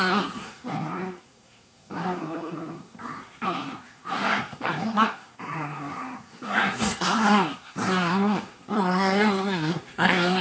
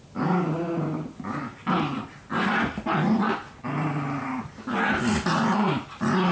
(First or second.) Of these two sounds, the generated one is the first